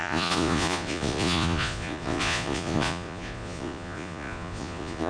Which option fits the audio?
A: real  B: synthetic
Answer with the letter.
B